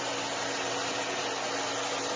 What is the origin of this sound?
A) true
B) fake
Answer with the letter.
A